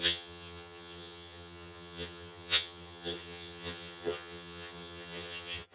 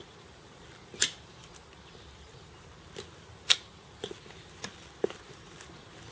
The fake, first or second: first